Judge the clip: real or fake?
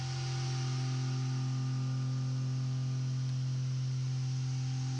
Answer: real